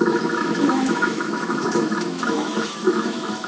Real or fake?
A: fake